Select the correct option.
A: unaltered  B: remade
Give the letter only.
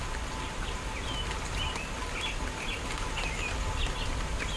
A